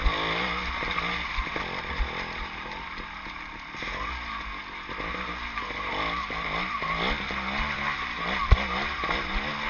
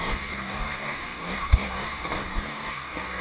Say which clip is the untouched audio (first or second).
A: first